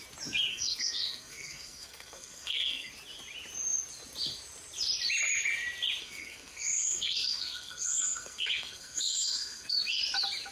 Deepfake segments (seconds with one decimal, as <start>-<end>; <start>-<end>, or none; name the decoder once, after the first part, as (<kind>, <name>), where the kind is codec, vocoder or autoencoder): 0.5-2.9 (codec, SNAC); 6.0-10.0